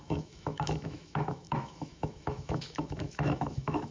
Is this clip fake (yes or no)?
yes